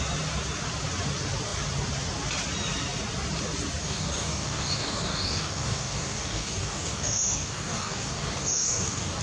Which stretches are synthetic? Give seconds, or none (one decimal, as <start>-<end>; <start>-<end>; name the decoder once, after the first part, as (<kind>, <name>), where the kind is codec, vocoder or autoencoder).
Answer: 3.8-9.2 (codec, DAC)